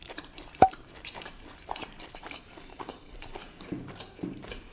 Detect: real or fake fake